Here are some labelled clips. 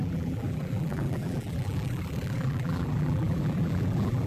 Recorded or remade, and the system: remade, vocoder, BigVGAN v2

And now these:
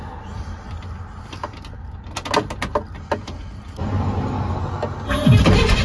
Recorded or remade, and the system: recorded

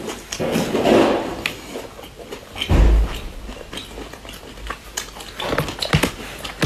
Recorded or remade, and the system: recorded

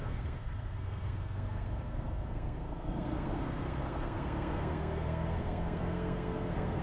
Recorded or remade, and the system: remade, codec, SNAC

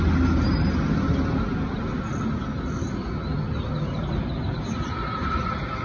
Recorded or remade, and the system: recorded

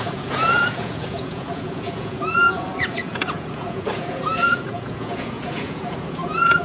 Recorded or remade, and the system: remade, vocoder, Vocos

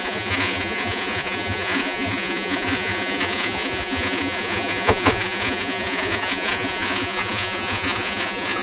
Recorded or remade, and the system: remade, vocoder, Vocos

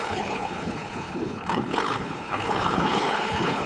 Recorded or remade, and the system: remade, codec, HILCodec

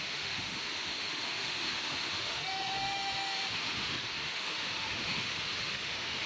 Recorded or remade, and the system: remade, autoencoder, DAC-VAE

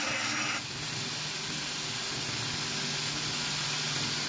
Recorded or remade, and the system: recorded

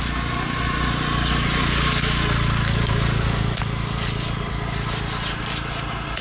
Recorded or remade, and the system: recorded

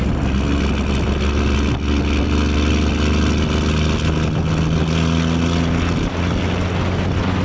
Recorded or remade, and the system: recorded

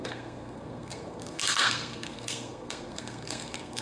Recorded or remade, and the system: remade, codec, SNAC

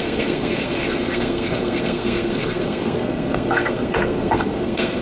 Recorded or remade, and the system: remade, codec, SNAC